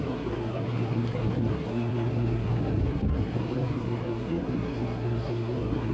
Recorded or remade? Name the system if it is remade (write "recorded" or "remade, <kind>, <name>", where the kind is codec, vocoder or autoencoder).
remade, codec, SNAC